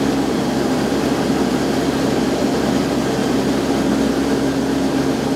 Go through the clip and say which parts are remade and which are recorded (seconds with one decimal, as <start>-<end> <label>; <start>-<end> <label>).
0.0-5.4 recorded